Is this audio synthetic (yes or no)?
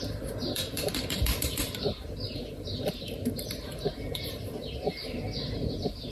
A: yes